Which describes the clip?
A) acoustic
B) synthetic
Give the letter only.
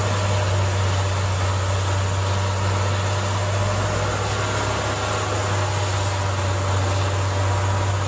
A